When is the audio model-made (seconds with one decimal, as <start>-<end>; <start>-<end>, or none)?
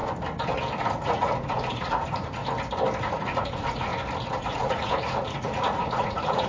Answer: 0.8-2.4; 3.0-3.9; 4.4-6.5